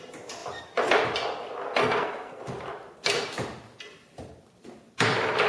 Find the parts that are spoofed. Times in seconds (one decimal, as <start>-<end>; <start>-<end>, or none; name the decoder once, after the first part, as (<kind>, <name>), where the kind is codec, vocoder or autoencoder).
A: 1.8-2.4 (codec, SNAC)